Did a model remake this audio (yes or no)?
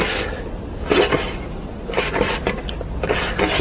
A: no